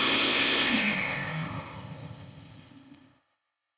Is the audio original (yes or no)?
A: no